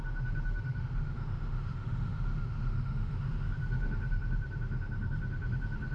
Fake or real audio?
fake